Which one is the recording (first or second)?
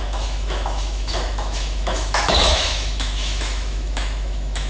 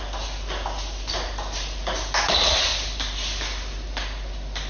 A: second